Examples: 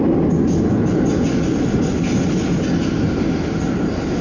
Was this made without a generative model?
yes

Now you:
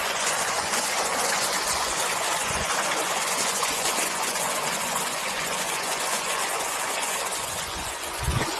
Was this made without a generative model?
no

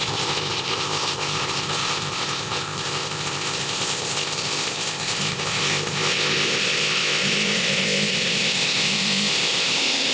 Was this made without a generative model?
no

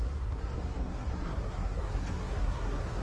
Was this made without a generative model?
no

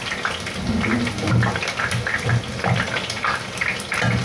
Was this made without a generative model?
yes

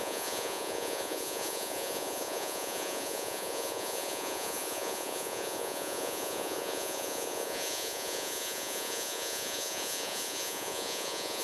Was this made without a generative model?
no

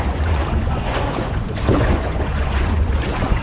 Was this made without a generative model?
no